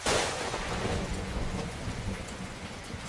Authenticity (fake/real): fake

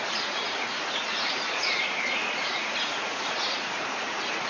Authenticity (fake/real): fake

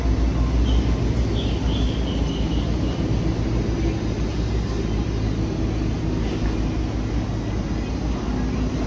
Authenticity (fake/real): real